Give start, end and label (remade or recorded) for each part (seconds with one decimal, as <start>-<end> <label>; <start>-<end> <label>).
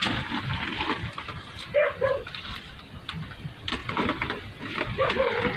0.0-5.6 recorded